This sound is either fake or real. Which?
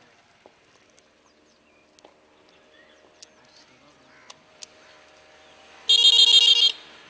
real